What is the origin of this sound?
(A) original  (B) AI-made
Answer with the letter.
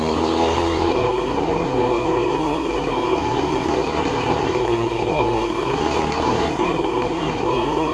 B